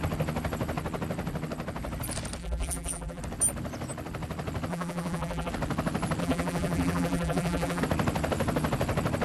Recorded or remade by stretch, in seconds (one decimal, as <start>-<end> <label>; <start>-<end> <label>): 0.0-2.4 recorded; 2.4-3.2 remade; 3.2-4.7 recorded; 4.7-5.5 remade; 5.5-6.2 recorded; 6.2-7.8 remade; 7.8-9.2 recorded